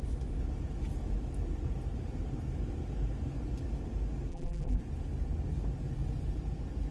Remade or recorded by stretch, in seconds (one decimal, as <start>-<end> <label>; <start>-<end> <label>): 0.0-4.3 recorded; 4.3-4.8 remade; 4.8-6.9 recorded